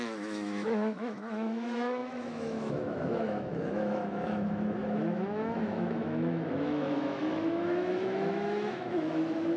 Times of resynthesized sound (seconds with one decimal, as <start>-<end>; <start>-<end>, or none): 0.0-9.6